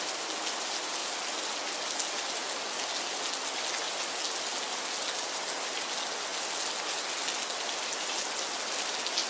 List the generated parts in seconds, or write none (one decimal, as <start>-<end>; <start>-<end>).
none